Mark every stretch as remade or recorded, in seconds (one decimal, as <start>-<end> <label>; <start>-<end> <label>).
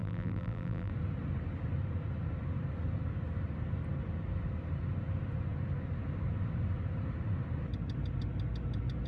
0.0-0.9 remade; 0.9-9.1 recorded